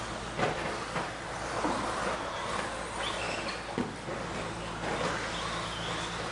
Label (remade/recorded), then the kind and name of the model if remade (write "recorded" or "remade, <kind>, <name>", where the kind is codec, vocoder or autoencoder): recorded